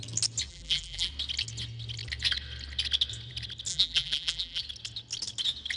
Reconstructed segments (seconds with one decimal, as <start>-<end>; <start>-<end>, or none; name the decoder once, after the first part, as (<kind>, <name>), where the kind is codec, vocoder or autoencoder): 0.5-1.1 (vocoder, BigVGAN v2); 3.7-4.6